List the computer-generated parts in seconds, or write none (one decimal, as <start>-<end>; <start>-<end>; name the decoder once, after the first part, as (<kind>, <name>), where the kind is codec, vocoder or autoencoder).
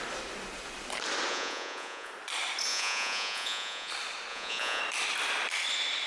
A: 1.3-2.1 (vocoder, Vocos); 2.7-3.9; 4.3-4.8